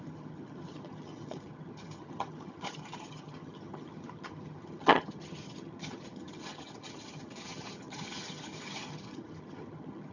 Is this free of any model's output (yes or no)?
no